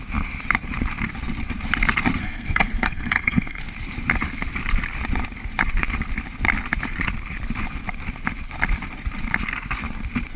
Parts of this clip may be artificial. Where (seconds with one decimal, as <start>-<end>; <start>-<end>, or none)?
2.2-3.6